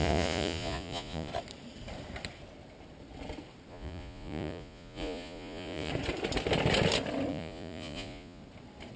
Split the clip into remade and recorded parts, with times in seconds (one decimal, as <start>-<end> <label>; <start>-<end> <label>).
0.0-1.3 remade; 1.3-3.7 recorded; 3.7-5.9 remade; 5.9-7.3 recorded; 7.3-8.4 remade; 8.4-9.0 recorded